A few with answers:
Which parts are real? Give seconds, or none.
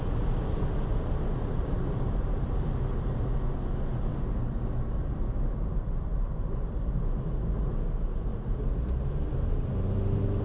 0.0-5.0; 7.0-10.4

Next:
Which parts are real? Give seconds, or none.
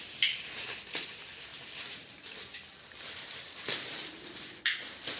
0.0-1.5; 4.6-5.2